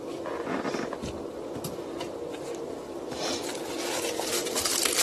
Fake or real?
fake